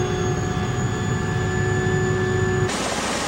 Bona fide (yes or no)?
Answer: yes